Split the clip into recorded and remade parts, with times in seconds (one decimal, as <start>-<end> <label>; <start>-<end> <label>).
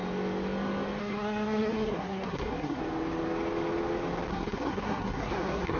0.0-1.0 recorded; 1.0-2.8 remade; 2.8-4.3 recorded; 4.3-5.8 remade